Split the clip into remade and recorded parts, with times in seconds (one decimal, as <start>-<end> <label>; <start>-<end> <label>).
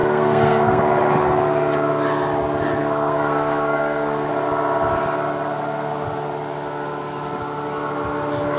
0.0-0.8 remade; 0.8-2.8 recorded; 2.8-4.3 remade; 4.3-8.6 recorded